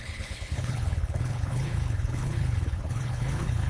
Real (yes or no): no